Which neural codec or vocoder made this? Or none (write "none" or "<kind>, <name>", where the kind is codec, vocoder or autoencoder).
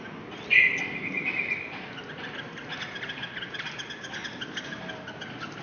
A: none